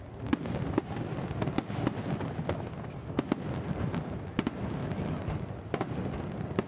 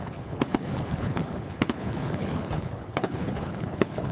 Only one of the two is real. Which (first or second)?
first